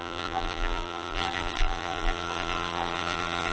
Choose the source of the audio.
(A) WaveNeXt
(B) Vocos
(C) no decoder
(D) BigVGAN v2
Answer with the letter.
D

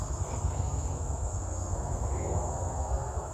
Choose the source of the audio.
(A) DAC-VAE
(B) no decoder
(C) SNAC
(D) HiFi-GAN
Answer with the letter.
C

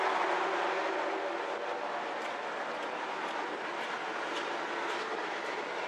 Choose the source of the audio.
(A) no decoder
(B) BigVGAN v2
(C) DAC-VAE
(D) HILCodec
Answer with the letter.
A